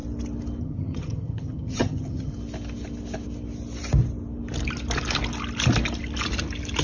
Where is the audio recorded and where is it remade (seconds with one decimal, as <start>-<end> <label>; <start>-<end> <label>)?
0.0-0.6 recorded; 0.6-2.3 remade; 2.3-6.8 recorded